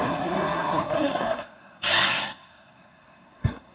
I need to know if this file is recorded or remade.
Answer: remade